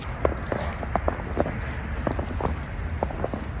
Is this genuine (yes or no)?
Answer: yes